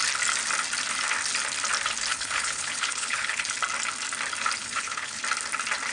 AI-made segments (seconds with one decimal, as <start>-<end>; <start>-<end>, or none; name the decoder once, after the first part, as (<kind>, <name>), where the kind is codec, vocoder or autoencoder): 2.1-3.4 (codec, HILCodec); 4.6-5.2